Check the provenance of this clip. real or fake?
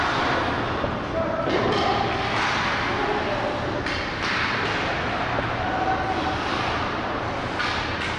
real